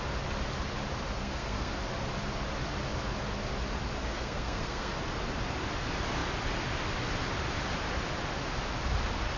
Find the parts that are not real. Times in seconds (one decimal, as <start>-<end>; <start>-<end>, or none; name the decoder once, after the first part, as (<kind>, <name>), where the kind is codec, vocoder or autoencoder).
1.2-1.7 (codec, SNAC); 4.0-4.9